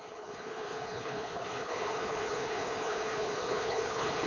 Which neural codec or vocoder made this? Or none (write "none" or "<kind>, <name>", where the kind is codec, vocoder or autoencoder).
codec, HILCodec